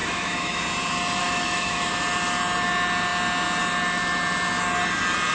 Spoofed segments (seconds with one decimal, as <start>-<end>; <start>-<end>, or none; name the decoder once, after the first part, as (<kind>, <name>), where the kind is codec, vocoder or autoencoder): 0.0-0.6 (autoencoder, DAC-VAE); 1.2-1.9